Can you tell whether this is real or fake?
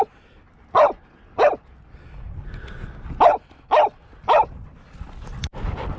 real